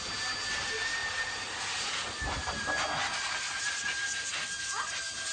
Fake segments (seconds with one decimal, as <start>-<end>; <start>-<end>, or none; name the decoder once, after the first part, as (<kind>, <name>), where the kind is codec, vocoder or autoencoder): none